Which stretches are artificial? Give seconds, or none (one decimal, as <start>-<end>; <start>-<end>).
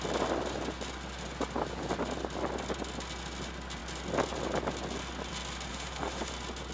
5.7-6.3